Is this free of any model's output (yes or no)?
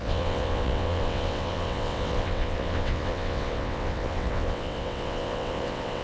no